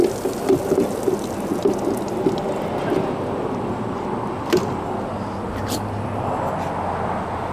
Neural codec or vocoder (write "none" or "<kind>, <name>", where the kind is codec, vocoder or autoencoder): none